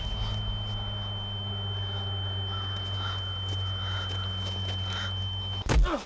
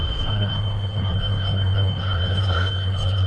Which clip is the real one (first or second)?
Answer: first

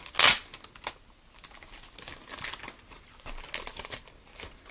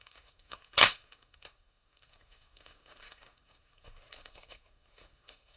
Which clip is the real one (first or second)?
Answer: first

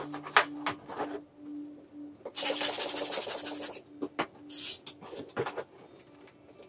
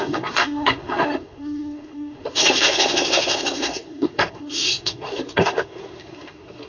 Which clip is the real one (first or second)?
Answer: first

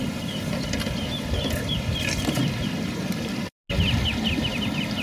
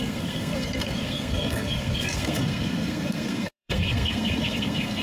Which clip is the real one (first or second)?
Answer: first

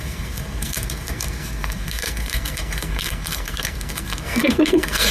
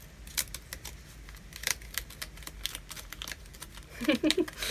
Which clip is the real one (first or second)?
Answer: second